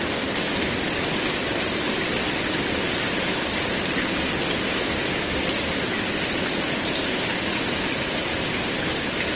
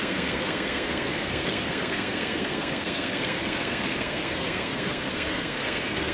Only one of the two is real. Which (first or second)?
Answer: first